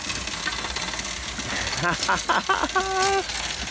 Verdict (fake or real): real